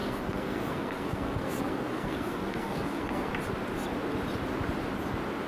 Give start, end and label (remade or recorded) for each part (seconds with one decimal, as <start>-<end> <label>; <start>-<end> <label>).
0.0-3.3 remade; 3.3-5.5 recorded